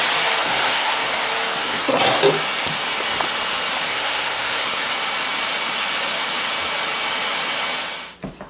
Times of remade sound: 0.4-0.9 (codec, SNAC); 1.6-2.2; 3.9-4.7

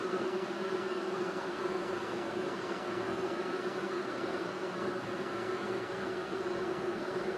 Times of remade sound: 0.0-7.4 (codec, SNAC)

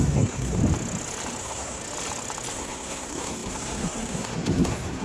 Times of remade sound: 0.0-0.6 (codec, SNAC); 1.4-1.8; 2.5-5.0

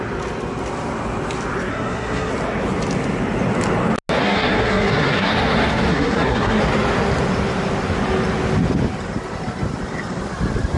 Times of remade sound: 1.7-2.3 (codec, SNAC); 4.2-5.3; 5.9-6.6

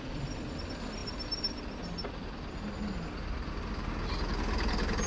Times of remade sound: none